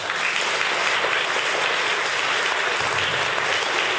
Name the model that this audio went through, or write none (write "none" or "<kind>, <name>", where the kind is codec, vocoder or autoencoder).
none